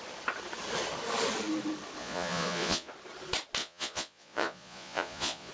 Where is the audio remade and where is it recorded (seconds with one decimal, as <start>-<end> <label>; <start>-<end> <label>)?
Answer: 0.0-2.0 recorded; 2.0-2.9 remade; 2.9-3.6 recorded; 3.6-5.5 remade